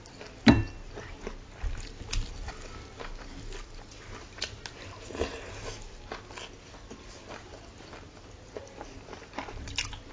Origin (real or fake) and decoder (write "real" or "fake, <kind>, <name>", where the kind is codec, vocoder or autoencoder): real